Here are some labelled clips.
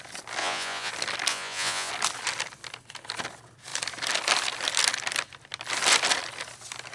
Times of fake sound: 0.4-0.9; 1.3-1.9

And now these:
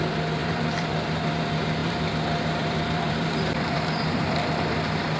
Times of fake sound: 0.4-1.4; 1.8-4.6

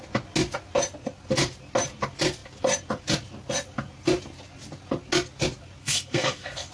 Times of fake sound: 5.8-6.7

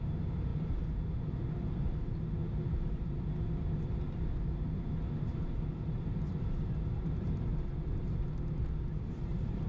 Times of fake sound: 0.0-7.5; 9.1-9.7

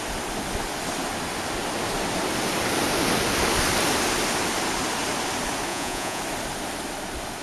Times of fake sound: 5.7-6.2

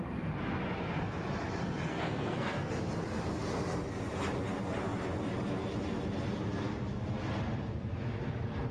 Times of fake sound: 1.9-2.7

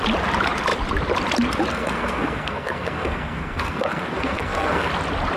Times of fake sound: 1.7-4.9